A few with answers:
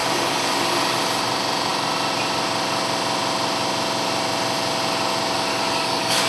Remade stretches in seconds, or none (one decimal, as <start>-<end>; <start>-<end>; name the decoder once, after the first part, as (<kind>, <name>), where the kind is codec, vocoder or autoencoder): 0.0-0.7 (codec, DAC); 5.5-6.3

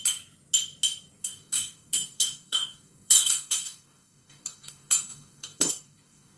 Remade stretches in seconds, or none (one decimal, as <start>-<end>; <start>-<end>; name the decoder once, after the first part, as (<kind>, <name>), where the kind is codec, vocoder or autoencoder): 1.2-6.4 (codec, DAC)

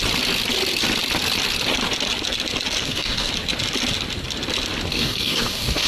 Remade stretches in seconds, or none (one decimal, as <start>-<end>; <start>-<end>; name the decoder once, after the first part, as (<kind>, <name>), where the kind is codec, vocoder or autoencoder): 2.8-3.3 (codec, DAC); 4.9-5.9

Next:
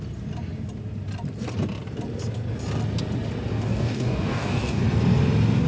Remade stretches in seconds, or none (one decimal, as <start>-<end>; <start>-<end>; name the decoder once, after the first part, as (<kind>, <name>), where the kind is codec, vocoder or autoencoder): 3.5-4.8 (codec, DAC)

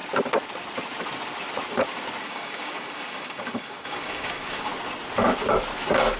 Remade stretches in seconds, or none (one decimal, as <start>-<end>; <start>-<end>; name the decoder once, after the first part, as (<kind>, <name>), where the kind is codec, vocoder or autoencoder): 2.2-4.7 (codec, DAC)

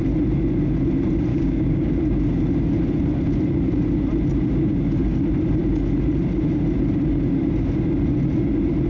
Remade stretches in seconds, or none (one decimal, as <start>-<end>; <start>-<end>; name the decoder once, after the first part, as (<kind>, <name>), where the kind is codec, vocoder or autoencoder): 1.3-2.0 (codec, DAC)

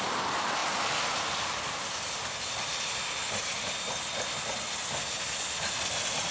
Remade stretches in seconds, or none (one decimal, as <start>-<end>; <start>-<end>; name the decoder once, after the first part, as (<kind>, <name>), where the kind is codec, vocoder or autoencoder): none